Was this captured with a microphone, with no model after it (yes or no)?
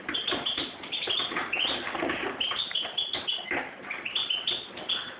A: yes